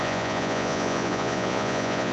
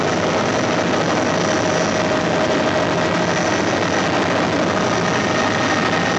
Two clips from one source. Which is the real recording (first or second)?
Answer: second